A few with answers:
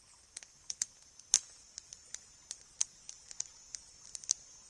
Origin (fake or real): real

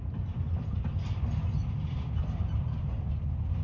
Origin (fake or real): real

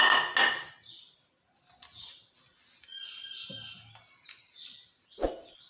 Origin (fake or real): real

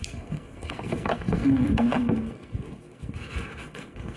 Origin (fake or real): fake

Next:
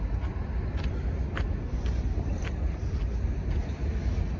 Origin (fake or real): real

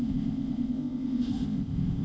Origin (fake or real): fake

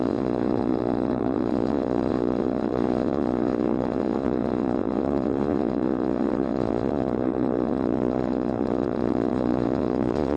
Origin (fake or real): fake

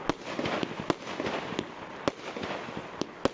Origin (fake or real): real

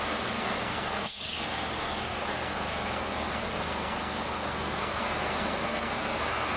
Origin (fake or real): fake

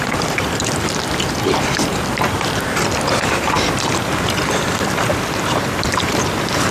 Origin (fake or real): fake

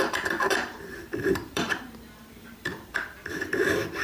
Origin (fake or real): fake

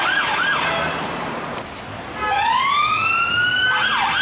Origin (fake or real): real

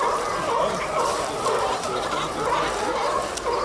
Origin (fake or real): real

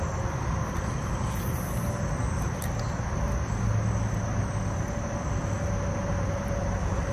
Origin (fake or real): real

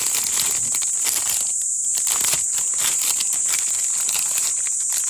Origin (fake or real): real